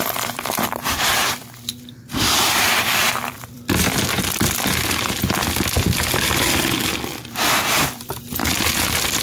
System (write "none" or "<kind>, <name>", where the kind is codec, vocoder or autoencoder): vocoder, BigVGAN v2